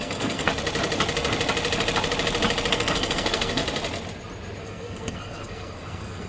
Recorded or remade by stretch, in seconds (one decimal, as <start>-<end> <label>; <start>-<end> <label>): 0.0-0.5 remade; 0.5-2.7 recorded; 2.7-3.6 remade; 3.6-4.6 recorded; 4.6-6.3 remade